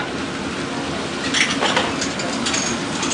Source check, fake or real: real